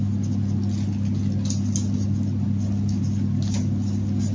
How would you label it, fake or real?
real